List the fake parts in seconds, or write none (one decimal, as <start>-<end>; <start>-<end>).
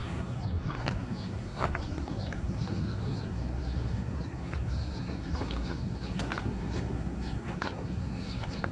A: 0.0-8.7